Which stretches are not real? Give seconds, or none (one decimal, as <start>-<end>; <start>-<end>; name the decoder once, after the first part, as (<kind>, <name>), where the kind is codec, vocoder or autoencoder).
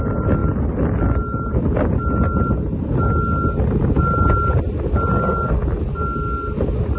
none